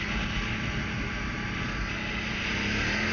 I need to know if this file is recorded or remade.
recorded